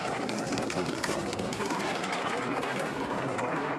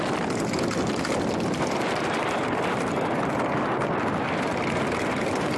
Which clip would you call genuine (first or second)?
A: second